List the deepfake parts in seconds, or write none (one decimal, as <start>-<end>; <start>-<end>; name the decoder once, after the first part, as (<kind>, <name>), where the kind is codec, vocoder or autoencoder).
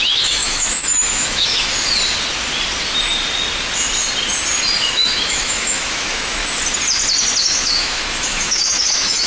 0.0-1.7 (autoencoder, DAC-VAE); 4.8-6.4; 7.4-9.3